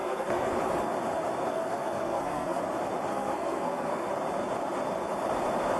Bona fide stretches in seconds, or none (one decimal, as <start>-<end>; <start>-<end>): 0.5-1.5; 2.6-3.1; 4.1-5.8